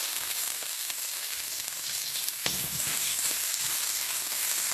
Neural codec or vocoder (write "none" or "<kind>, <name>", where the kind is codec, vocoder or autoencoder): codec, DAC